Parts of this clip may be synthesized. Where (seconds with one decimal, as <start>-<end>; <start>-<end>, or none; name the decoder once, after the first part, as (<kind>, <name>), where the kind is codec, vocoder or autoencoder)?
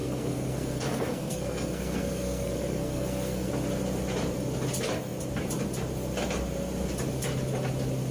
0.0-3.5 (codec, SNAC)